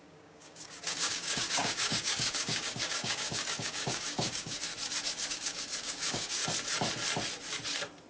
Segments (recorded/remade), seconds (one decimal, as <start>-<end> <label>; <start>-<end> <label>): 0.0-4.7 remade; 4.7-5.3 recorded; 5.3-6.4 remade; 6.4-8.1 recorded